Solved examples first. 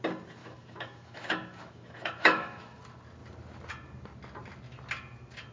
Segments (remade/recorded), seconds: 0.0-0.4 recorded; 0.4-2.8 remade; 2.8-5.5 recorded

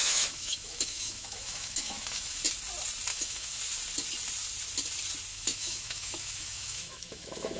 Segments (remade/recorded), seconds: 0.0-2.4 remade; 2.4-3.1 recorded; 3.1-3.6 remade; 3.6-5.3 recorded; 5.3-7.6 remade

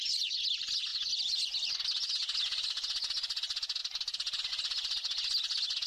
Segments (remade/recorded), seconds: 0.0-5.9 recorded